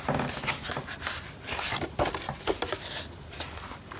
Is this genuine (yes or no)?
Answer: yes